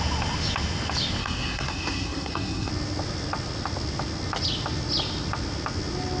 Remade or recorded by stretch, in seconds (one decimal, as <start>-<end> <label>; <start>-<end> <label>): 0.0-1.2 recorded; 1.2-2.7 remade; 2.7-6.2 recorded